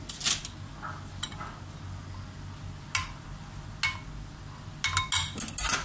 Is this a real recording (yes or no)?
yes